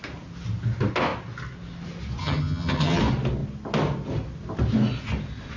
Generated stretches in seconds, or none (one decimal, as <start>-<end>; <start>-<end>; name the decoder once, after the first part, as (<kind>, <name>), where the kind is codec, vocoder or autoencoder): 2.2-3.0 (vocoder, HiFi-GAN)